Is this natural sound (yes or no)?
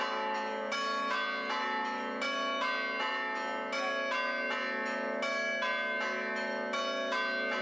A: yes